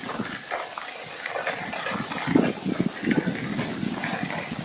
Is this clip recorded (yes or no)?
yes